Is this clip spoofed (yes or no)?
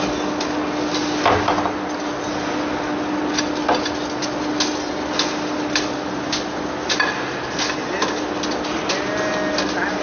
no